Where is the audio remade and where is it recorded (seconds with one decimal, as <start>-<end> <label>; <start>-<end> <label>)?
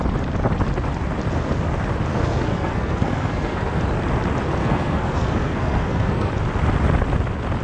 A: 0.0-2.1 recorded; 2.1-3.8 remade; 3.8-4.6 recorded; 4.6-6.3 remade; 6.3-7.6 recorded